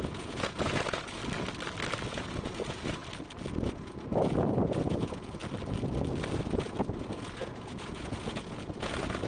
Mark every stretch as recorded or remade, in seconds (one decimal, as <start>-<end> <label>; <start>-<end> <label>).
0.0-1.2 remade; 1.2-2.1 recorded; 2.1-3.0 remade; 3.0-3.5 recorded; 3.5-5.4 remade; 5.4-6.4 recorded; 6.4-9.3 remade